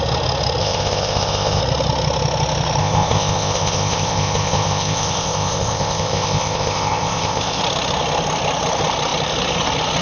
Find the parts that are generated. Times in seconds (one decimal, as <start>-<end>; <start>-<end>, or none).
0.6-1.6; 2.8-7.6